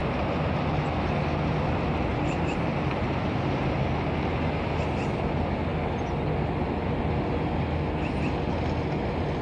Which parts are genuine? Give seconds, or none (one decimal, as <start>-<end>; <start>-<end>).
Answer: 0.0-2.1; 3.6-9.4